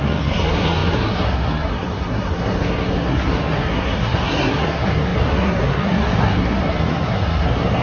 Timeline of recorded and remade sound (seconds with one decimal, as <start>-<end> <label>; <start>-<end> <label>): 0.0-7.8 remade